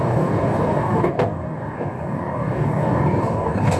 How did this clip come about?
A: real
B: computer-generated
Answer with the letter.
B